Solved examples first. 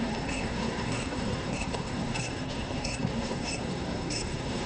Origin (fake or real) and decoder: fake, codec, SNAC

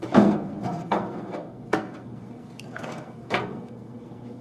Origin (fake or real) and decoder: fake, codec, SNAC